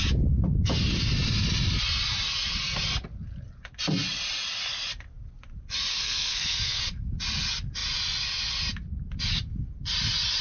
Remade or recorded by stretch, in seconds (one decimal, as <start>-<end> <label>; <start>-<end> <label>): 0.0-5.9 recorded; 5.9-6.8 remade; 6.8-10.4 recorded